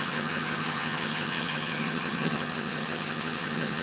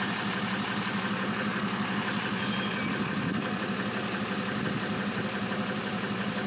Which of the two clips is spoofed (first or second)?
first